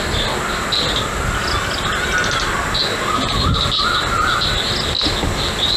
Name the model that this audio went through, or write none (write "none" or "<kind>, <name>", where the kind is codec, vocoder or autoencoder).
none